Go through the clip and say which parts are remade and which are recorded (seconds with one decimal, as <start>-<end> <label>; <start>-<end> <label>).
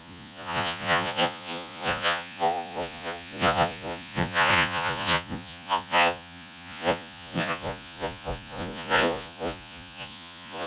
0.0-10.7 remade